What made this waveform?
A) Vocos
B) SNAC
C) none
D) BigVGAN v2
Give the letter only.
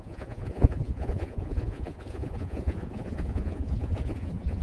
A